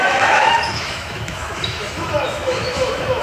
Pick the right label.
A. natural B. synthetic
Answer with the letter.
B